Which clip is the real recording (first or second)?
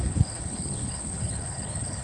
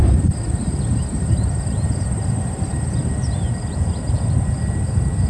second